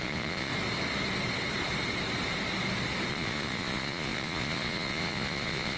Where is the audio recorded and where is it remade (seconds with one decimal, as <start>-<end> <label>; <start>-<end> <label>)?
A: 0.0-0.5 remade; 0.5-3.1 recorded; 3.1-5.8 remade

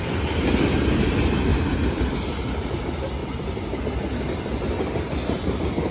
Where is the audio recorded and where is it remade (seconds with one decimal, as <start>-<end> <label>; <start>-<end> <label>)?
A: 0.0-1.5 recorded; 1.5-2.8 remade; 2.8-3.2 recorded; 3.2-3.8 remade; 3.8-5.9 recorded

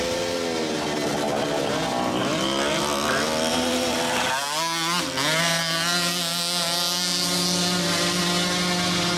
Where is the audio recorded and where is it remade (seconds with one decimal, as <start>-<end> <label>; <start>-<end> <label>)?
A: 0.0-3.5 recorded; 3.5-4.0 remade; 4.0-9.2 recorded

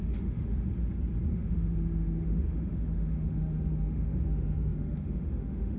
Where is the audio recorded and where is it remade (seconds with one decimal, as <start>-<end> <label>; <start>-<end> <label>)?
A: 0.0-0.7 remade; 0.7-1.3 recorded; 1.3-5.8 remade

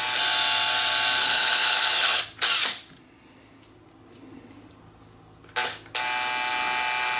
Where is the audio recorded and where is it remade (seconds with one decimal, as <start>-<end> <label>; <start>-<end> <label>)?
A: 0.0-1.2 recorded; 1.2-2.2 remade; 2.2-7.2 recorded

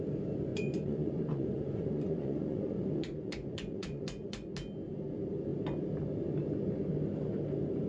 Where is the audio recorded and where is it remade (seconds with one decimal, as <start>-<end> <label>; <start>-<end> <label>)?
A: 0.0-0.5 recorded; 0.5-4.5 remade; 4.5-7.9 recorded